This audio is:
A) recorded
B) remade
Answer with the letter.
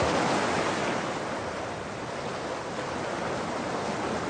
A